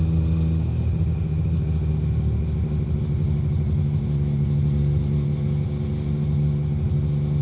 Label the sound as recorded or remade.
recorded